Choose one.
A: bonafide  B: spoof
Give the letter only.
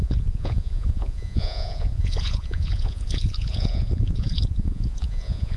B